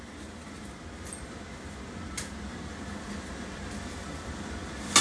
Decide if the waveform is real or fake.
real